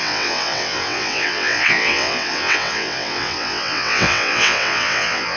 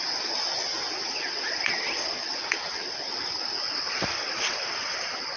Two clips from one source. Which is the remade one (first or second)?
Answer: first